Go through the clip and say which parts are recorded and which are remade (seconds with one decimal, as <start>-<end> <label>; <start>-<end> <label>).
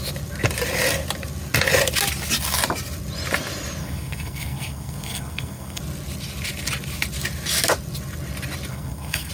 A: 0.0-3.8 recorded; 3.8-5.8 remade; 5.8-8.7 recorded; 8.7-9.3 remade